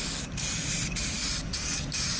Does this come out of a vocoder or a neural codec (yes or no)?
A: no